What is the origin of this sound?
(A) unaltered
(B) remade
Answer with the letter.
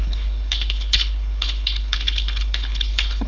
B